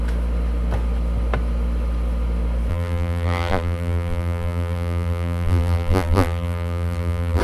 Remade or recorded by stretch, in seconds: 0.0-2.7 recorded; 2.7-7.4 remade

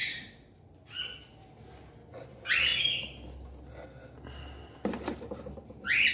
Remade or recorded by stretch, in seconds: 0.0-2.1 recorded; 2.1-2.7 remade; 2.7-5.5 recorded; 5.5-6.1 remade

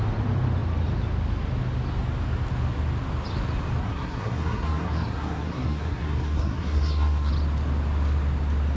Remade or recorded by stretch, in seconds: 0.0-3.8 recorded; 3.8-7.3 remade; 7.3-8.8 recorded

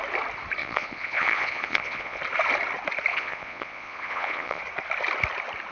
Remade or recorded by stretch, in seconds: 0.0-0.6 recorded; 0.6-2.2 remade; 2.2-3.1 recorded; 3.1-4.6 remade; 4.6-5.7 recorded

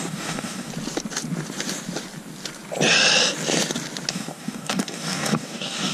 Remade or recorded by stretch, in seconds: 0.0-0.7 remade; 0.7-4.1 recorded; 4.1-5.9 remade

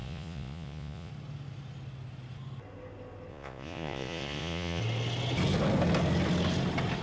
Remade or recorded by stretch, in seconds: 0.0-1.1 remade; 1.1-3.3 recorded; 3.3-4.8 remade; 4.8-7.0 recorded

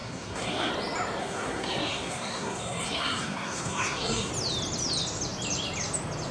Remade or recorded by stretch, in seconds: 0.0-0.7 remade; 0.7-1.2 recorded; 1.2-4.3 remade; 4.3-6.3 recorded